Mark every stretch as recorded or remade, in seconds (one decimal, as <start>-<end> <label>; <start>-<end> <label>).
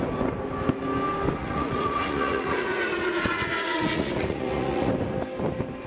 0.0-1.4 recorded; 1.4-4.9 remade; 4.9-5.9 recorded